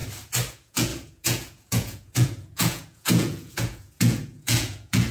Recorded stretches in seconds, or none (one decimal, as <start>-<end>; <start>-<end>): 0.0-0.5